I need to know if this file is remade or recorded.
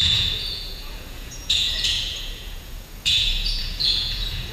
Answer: remade